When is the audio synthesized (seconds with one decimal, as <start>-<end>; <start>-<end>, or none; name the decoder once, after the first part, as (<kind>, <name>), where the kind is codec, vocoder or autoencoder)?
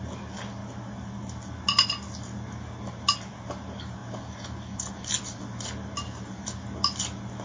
none